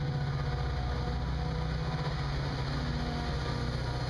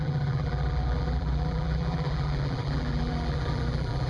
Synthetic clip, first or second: second